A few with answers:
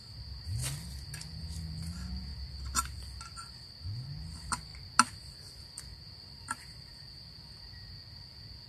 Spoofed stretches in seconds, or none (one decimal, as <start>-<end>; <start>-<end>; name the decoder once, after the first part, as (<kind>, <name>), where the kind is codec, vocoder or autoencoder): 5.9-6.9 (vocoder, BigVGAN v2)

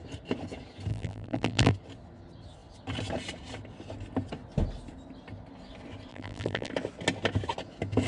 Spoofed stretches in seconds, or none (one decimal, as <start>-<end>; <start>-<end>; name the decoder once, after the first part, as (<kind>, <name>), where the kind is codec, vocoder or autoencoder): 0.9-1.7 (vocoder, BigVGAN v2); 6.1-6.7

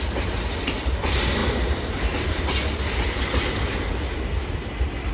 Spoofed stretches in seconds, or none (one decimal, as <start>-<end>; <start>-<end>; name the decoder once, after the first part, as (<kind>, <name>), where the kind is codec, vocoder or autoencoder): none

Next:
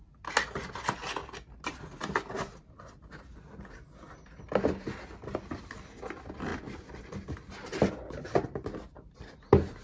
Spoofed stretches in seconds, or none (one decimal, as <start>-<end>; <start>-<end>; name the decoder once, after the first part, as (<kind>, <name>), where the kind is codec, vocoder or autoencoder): none

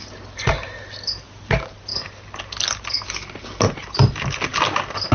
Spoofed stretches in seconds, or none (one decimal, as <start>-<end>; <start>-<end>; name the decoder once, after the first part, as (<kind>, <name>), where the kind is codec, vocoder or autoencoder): 0.0-0.8 (vocoder, BigVGAN v2)

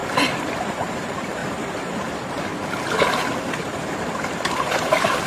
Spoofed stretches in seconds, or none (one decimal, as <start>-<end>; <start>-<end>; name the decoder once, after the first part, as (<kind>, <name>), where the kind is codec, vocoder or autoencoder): 0.6-1.4 (vocoder, BigVGAN v2); 4.6-5.3